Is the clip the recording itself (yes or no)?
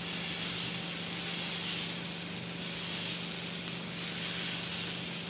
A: yes